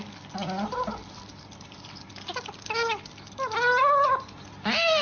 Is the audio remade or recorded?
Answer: recorded